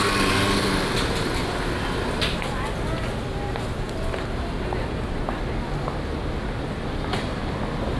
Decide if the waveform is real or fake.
real